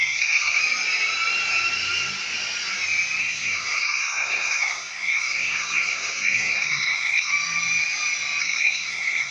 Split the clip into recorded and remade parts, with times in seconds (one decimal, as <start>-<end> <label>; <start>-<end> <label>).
0.0-0.6 remade; 0.6-3.2 recorded; 3.2-7.3 remade; 7.3-8.4 recorded; 8.4-9.3 remade